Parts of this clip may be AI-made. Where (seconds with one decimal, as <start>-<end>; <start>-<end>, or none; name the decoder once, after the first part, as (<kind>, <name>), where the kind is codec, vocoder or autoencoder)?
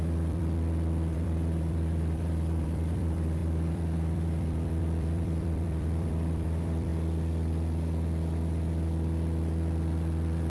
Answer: 0.0-6.9 (vocoder, BigVGAN v2)